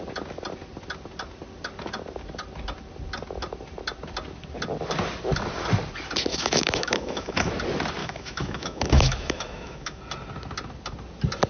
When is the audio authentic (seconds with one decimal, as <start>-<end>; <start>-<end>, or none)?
0.0-6.3; 7.5-8.0; 10.0-11.5